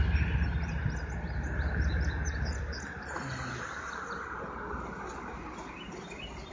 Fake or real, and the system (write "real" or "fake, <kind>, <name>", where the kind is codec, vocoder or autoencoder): real